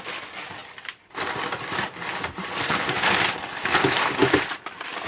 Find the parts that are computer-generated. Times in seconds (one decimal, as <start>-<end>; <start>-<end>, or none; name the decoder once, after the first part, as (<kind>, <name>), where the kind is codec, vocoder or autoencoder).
0.0-5.1 (vocoder, BigVGAN v2)